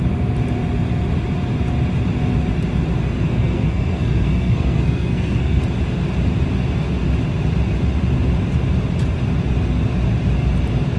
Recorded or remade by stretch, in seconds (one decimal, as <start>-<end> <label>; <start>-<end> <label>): 0.0-3.3 recorded; 3.3-5.6 remade; 5.6-11.0 recorded